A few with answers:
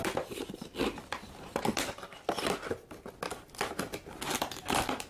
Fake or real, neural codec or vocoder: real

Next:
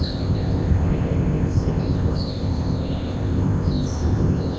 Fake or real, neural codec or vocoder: fake, codec, ZipCodec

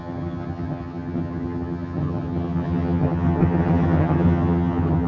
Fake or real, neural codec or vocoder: fake, vocoder, HiFi-GAN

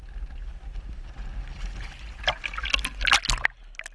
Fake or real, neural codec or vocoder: real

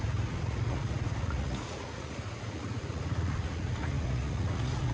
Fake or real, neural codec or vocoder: fake, vocoder, Vocos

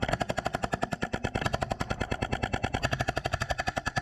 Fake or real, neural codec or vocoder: real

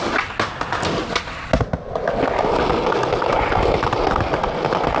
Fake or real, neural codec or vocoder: real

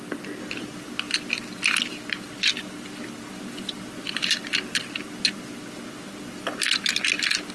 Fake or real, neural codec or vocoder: real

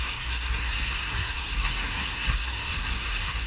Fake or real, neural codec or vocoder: fake, codec, SNAC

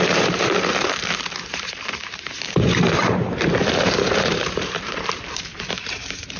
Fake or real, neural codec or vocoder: fake, vocoder, BigVGAN v2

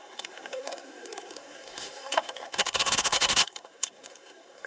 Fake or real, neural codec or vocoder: fake, codec, SNAC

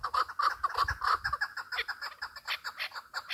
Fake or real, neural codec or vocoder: real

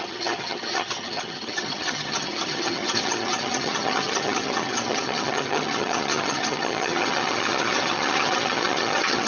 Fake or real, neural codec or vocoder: fake, vocoder, HiFi-GAN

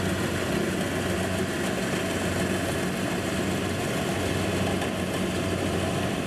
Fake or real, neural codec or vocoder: real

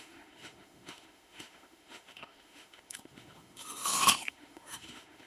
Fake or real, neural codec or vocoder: fake, autoencoder, DAC-VAE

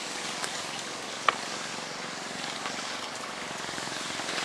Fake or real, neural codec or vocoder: fake, codec, DAC